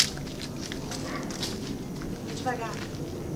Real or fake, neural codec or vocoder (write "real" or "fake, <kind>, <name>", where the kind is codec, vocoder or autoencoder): real